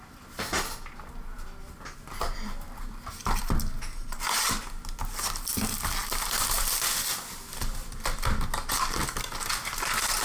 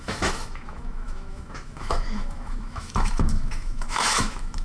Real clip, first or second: first